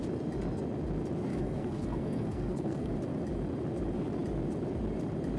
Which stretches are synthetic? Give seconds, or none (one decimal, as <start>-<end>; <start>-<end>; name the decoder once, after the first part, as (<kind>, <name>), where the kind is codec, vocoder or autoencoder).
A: 1.3-2.9 (codec, SNAC)